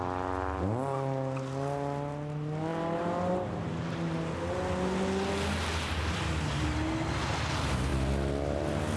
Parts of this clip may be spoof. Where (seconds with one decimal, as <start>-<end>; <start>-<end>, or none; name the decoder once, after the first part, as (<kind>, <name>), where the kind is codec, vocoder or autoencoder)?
2.7-4.2 (vocoder, BigVGAN v2)